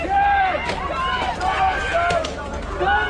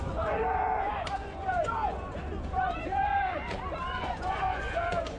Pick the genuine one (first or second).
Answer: first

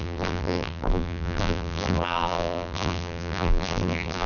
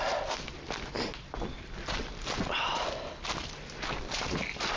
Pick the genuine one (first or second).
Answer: second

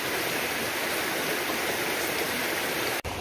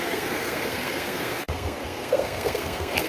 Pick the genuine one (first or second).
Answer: first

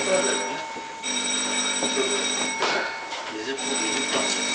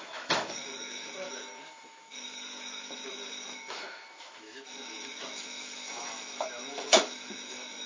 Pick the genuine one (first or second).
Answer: first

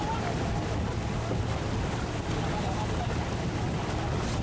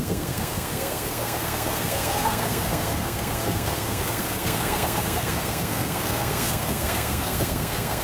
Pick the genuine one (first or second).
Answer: first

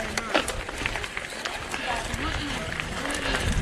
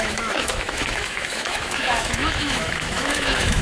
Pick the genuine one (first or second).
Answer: first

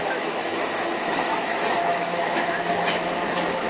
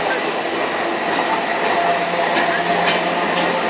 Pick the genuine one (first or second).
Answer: second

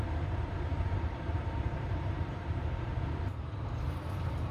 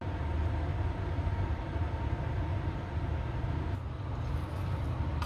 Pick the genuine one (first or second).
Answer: second